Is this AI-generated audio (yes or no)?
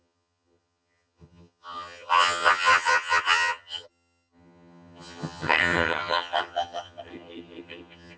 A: yes